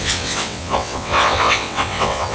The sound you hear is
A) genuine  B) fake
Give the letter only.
B